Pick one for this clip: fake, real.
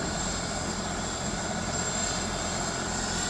real